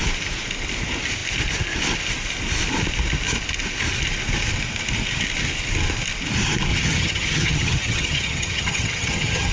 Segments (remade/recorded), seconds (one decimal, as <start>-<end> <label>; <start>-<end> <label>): 0.0-6.7 recorded; 6.7-9.5 remade